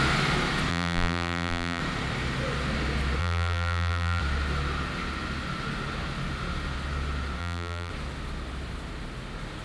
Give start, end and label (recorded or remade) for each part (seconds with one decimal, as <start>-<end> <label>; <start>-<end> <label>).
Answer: 0.0-0.7 recorded; 0.7-1.8 remade; 1.8-3.2 recorded; 3.2-4.2 remade; 4.2-7.4 recorded; 7.4-7.9 remade; 7.9-9.6 recorded